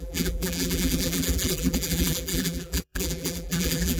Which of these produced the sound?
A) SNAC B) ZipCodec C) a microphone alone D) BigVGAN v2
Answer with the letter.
D